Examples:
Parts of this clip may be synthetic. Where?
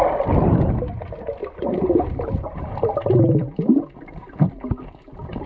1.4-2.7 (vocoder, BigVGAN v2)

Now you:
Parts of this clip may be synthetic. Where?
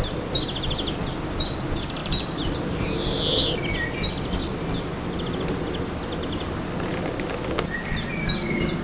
2.0-3.2 (vocoder, BigVGAN v2)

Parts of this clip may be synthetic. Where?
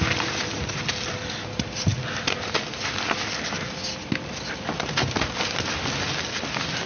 none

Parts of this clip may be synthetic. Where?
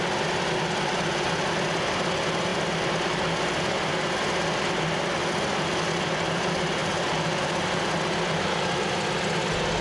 6.8-8.0 (vocoder, BigVGAN v2)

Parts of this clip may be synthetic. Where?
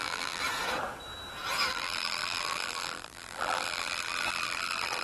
0.0-0.4 (vocoder, BigVGAN v2); 1.7-5.0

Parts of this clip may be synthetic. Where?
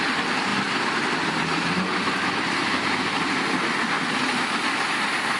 0.5-3.3 (vocoder, BigVGAN v2)